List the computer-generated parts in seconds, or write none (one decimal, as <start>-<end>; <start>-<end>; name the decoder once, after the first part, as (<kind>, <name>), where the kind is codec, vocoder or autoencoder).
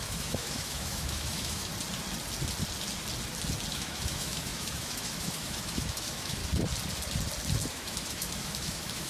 0.0-1.7 (autoencoder, DAC-VAE); 3.7-6.4; 7.7-9.1